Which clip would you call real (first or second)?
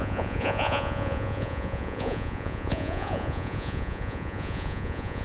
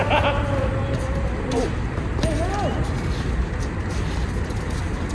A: second